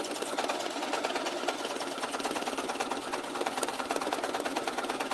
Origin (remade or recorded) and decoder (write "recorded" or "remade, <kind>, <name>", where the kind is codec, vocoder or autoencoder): remade, vocoder, Vocos